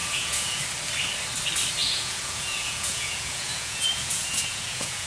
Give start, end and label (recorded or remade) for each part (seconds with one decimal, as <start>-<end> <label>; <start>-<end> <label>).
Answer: 0.0-0.6 remade; 0.6-1.8 recorded; 1.8-5.1 remade